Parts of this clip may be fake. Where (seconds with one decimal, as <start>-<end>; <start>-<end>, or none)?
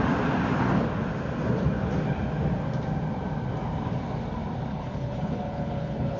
4.7-6.2